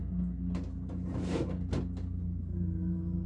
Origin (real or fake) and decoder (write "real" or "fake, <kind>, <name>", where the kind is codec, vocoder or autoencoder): real